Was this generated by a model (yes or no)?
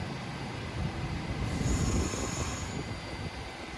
yes